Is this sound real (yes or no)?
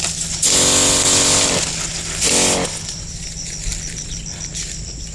yes